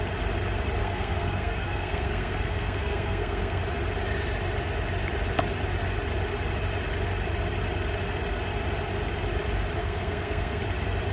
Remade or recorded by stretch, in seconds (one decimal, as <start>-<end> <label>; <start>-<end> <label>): 0.0-0.8 recorded; 0.8-3.6 remade; 3.6-9.8 recorded; 9.8-10.6 remade; 10.6-11.1 recorded